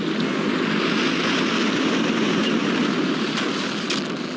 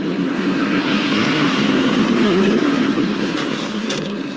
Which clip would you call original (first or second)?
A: first